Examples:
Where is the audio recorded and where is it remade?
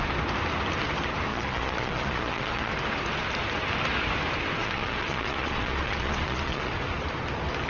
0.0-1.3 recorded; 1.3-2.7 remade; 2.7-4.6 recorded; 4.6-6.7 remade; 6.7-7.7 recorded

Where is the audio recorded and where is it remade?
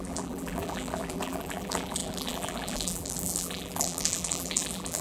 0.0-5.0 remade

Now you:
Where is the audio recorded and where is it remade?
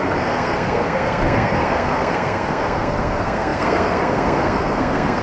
0.0-5.2 remade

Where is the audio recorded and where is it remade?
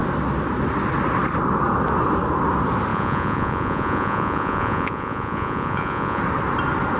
0.0-2.9 recorded; 2.9-6.2 remade; 6.2-7.0 recorded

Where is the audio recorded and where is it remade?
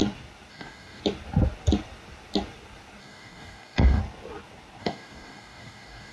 0.0-0.5 recorded; 0.5-1.0 remade; 1.0-3.0 recorded; 3.0-4.0 remade; 4.0-4.8 recorded; 4.8-6.1 remade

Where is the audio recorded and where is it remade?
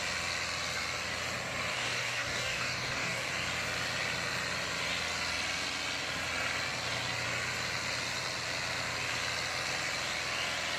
0.0-1.7 recorded; 1.7-3.3 remade; 3.3-10.8 recorded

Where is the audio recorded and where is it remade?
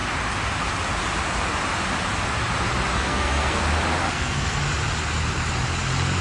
0.0-2.9 recorded; 2.9-3.6 remade; 3.6-4.0 recorded; 4.0-4.6 remade; 4.6-6.2 recorded